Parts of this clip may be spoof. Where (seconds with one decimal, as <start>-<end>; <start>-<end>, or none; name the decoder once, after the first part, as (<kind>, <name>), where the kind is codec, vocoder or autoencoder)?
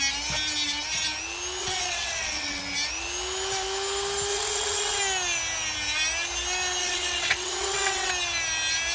1.6-2.6 (vocoder, WaveNeXt); 4.3-5.0; 6.8-8.1